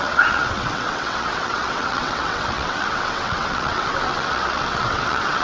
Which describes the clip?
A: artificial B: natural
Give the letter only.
A